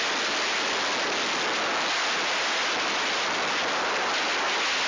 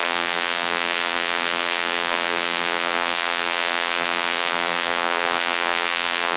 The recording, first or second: first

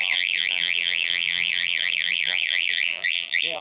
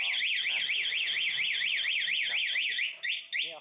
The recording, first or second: second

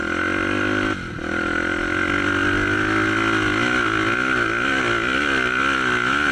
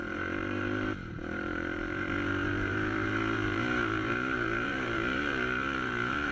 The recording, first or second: first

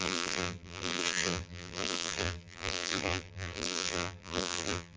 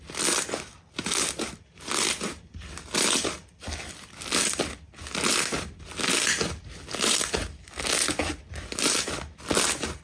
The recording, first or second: second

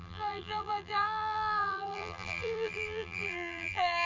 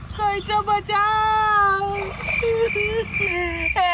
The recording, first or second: second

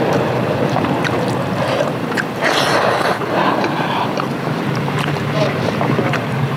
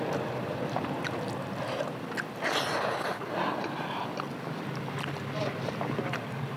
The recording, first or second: second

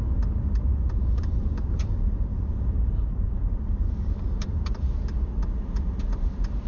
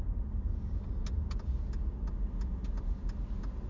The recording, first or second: second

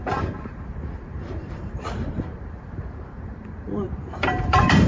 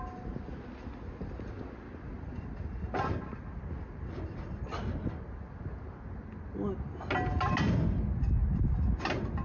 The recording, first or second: second